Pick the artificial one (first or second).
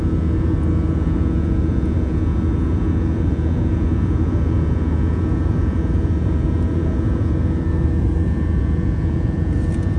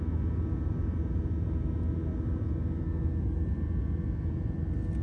first